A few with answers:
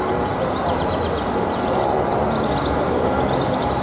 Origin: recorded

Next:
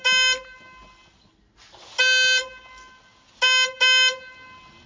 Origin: recorded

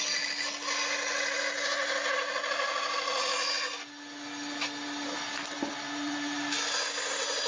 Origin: recorded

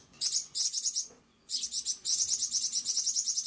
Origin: remade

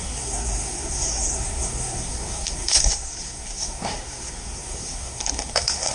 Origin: remade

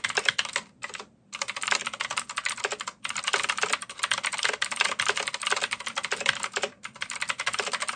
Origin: remade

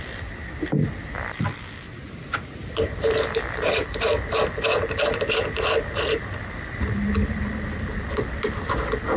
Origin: recorded